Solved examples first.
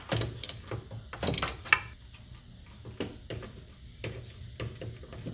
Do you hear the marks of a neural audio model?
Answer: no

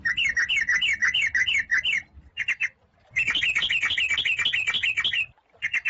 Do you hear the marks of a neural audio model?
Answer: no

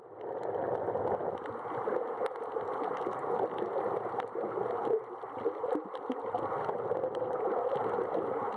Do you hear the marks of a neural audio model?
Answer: no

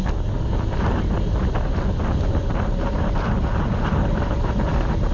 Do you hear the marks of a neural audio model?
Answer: no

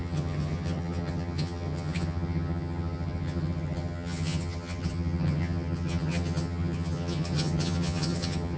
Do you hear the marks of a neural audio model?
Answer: yes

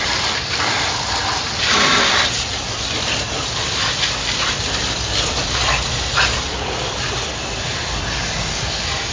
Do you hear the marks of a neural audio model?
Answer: yes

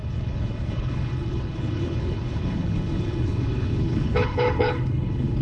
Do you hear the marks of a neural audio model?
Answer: yes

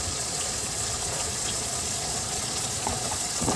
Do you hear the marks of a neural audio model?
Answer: yes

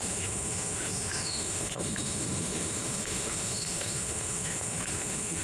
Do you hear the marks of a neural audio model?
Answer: yes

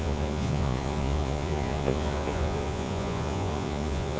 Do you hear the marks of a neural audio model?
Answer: yes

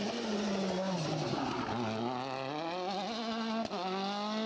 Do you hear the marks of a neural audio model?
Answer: no